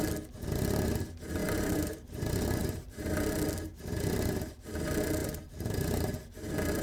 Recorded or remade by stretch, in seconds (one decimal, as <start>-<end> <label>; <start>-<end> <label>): 0.0-1.4 recorded; 1.4-2.2 remade; 2.2-2.6 recorded; 2.6-3.1 remade; 3.1-5.2 recorded; 5.2-6.1 remade; 6.1-6.8 recorded